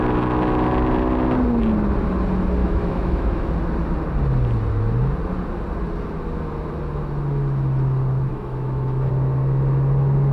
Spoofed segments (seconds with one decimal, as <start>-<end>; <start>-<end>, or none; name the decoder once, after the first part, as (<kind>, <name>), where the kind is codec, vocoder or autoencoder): 2.6-3.5 (autoencoder, DAC-VAE); 8.3-9.1

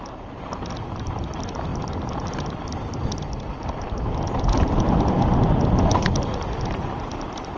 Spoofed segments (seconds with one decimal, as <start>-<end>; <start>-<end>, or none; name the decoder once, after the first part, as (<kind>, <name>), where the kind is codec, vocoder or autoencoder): none

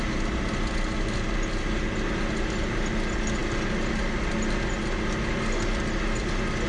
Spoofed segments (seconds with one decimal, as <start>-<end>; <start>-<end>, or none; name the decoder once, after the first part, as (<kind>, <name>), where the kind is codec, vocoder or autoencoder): none

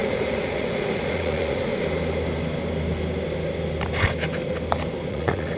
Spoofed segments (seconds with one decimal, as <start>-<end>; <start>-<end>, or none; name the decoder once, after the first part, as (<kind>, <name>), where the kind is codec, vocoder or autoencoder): 0.0-1.7 (vocoder, Vocos); 5.1-5.6

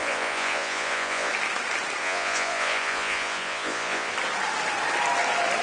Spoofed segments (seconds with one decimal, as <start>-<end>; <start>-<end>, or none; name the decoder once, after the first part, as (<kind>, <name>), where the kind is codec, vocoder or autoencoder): 0.0-1.3 (vocoder, Vocos); 2.0-4.1

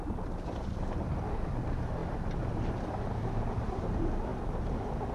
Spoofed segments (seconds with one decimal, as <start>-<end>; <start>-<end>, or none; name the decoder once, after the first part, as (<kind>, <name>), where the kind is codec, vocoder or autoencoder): none

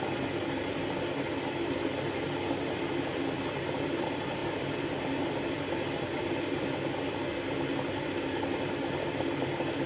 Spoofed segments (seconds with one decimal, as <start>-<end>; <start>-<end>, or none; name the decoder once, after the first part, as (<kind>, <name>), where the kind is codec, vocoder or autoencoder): none